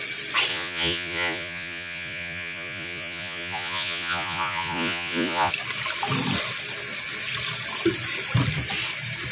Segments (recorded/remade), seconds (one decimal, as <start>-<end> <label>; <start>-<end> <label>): 0.0-0.5 recorded; 0.5-5.5 remade; 5.5-9.3 recorded